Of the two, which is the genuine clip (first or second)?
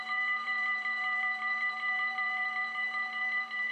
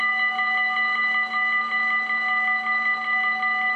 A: second